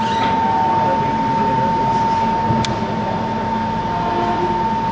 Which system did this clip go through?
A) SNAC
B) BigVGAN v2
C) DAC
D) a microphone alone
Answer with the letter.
D